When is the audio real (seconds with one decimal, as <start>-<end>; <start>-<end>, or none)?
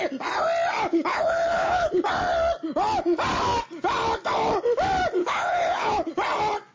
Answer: 0.0-0.9; 2.1-5.2; 6.1-6.7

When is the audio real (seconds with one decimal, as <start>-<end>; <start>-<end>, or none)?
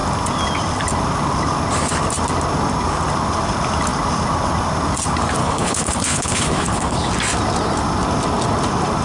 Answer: 0.0-5.4; 7.1-9.0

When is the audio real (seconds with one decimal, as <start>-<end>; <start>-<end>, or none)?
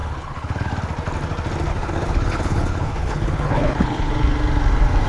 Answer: 0.7-1.7; 4.1-5.1